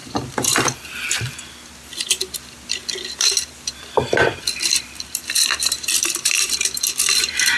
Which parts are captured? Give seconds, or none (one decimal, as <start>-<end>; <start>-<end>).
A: 1.3-2.8